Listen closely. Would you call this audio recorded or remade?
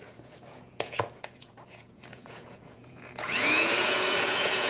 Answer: remade